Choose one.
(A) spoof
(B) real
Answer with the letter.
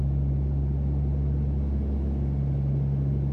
B